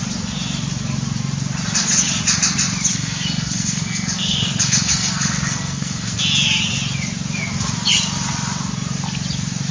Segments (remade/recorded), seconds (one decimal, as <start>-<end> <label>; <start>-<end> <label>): 0.0-2.9 recorded; 2.9-6.2 remade; 6.2-9.7 recorded